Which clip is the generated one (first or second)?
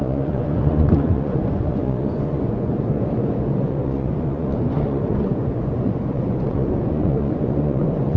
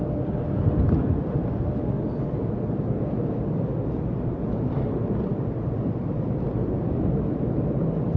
first